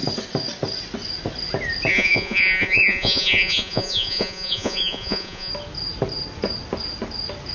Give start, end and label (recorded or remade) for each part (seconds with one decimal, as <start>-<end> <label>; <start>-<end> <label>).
0.0-1.9 recorded; 1.9-5.5 remade; 5.5-7.5 recorded